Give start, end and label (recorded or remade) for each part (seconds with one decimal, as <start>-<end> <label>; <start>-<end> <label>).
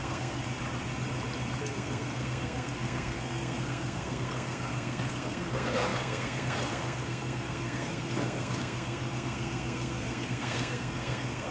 0.0-0.4 remade; 0.4-1.6 recorded; 1.6-11.5 remade